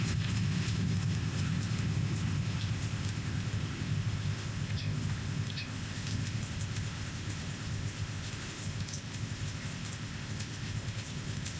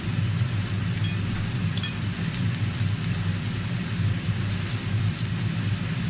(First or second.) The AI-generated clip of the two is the first